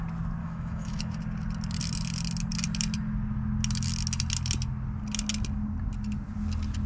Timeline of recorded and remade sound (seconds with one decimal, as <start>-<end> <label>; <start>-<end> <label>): 0.0-0.4 recorded; 0.4-1.2 remade; 1.2-6.9 recorded